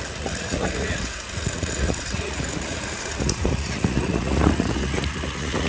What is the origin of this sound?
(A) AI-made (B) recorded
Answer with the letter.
A